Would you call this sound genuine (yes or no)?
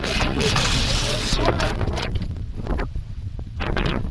no